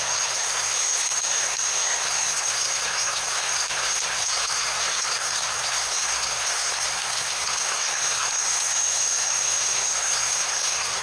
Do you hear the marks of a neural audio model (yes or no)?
yes